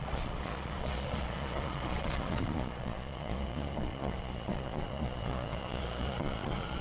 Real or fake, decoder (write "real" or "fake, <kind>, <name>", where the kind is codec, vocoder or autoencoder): fake, vocoder, Vocos